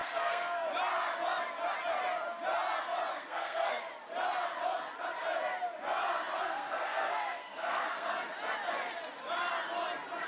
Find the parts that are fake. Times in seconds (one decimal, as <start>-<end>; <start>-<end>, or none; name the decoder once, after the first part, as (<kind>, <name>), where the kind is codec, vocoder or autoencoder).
0.0-0.7 (codec, SNAC); 3.1-3.8; 6.4-8.1